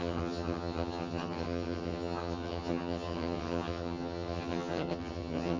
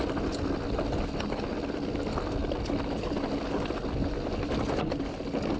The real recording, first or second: second